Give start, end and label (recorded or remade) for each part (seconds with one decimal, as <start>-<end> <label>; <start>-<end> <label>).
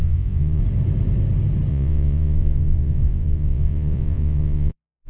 0.0-0.6 remade; 0.6-1.7 recorded; 1.7-5.1 remade